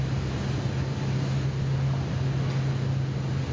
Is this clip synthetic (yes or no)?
no